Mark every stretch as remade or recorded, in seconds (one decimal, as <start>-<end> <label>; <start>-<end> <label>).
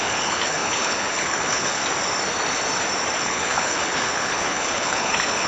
0.0-1.8 remade; 1.8-3.2 recorded; 3.2-5.5 remade